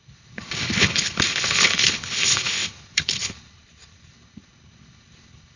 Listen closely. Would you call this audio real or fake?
fake